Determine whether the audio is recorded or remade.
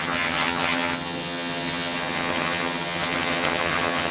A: remade